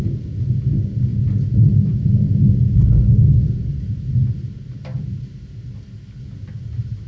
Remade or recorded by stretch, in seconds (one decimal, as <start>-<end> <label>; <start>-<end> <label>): 0.0-7.1 recorded